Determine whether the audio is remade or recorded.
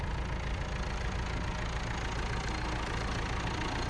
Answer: recorded